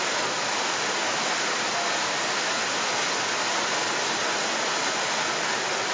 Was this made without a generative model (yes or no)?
yes